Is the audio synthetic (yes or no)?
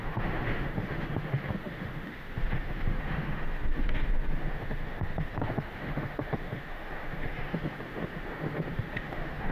yes